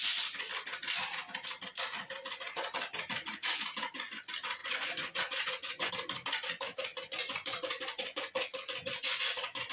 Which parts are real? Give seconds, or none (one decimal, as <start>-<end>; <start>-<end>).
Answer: 0.0-4.6; 5.9-6.9